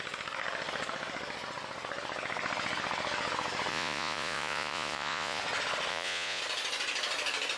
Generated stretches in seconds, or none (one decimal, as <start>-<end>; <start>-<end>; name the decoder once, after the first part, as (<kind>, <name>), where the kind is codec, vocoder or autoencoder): 3.7-5.4 (vocoder, Vocos); 5.9-6.4